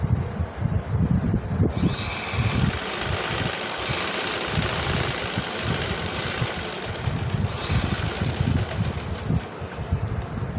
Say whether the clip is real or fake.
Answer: real